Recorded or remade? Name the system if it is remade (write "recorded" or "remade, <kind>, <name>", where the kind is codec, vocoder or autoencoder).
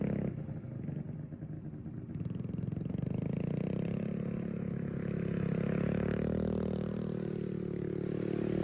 recorded